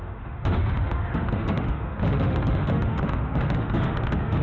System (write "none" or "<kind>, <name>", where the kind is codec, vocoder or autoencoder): autoencoder, DAC-VAE